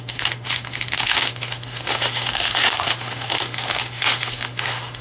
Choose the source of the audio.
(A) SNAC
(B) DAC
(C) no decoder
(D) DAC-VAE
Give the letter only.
D